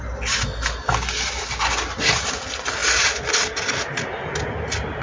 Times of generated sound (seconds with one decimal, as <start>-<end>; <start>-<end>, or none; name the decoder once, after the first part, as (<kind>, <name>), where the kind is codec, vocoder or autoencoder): none